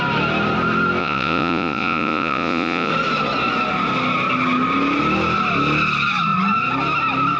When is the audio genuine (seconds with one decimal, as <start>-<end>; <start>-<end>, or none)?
0.0-1.0; 2.9-7.4